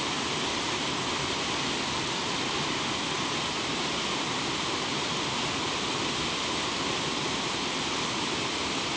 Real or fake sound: fake